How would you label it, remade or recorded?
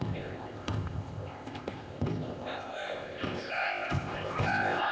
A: remade